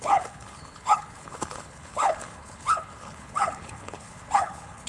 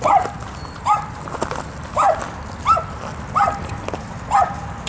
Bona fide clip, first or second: second